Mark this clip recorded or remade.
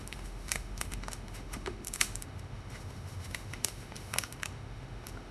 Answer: remade